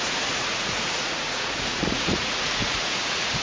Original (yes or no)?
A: no